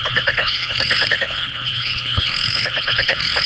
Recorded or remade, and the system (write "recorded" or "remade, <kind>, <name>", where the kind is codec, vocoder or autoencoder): remade, codec, HILCodec